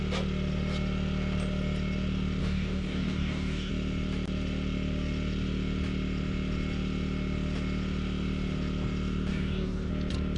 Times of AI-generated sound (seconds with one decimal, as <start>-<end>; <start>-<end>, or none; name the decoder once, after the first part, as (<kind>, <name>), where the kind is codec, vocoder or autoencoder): 2.4-3.7 (codec, DAC); 9.3-9.9